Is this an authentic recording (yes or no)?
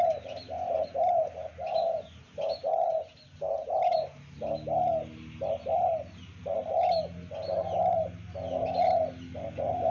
yes